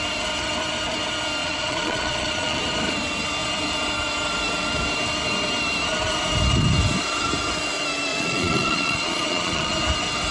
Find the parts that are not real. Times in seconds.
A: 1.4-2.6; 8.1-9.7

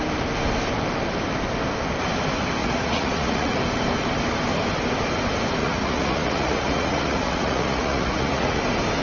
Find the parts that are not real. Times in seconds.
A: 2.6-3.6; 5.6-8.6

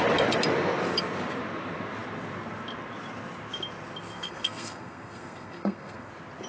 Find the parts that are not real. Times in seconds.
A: 4.2-6.1

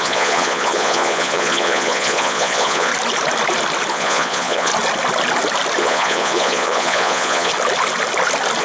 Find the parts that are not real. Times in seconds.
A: 0.0-2.9; 3.9-4.7; 5.8-7.5